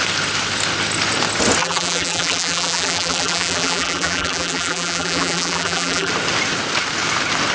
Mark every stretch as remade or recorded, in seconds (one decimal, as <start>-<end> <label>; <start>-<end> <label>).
0.0-1.6 recorded; 1.6-6.1 remade; 6.1-7.5 recorded